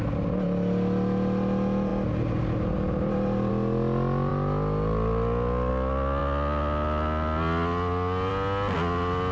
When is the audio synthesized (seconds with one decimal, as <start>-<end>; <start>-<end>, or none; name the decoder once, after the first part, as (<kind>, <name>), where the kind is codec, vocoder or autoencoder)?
none